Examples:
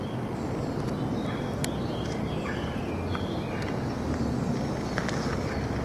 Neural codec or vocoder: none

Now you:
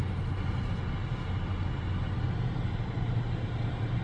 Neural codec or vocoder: none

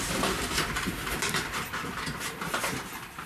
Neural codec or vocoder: none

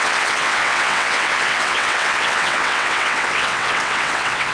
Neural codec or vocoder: vocoder, WaveNeXt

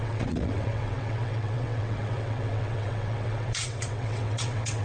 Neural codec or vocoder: vocoder, WaveNeXt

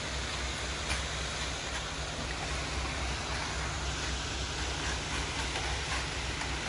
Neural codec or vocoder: none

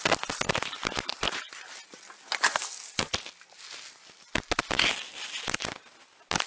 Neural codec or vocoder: none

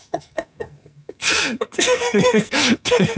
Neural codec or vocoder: codec, SNAC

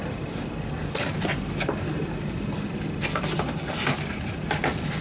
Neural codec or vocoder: none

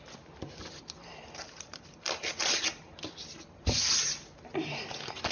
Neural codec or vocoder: none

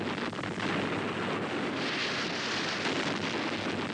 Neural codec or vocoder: none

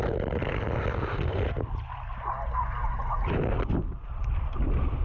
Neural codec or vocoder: none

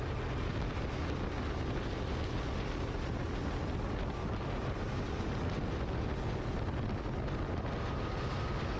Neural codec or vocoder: none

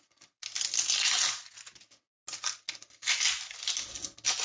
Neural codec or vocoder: none